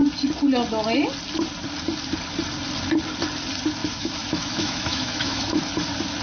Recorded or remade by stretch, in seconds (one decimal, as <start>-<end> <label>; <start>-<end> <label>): 0.0-3.8 recorded; 3.8-5.6 remade; 5.6-6.2 recorded